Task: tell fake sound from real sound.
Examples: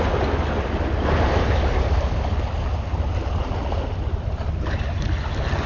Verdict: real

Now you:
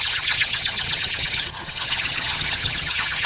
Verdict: fake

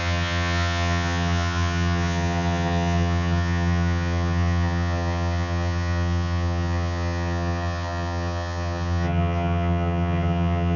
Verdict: fake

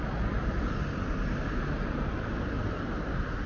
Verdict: real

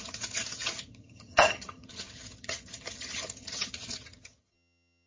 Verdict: fake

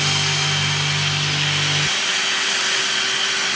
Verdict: real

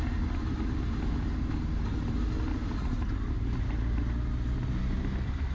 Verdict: real